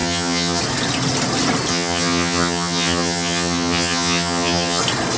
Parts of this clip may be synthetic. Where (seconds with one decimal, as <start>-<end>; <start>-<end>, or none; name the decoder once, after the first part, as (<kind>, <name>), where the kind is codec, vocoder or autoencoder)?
0.0-0.6 (vocoder, HiFi-GAN); 1.7-4.8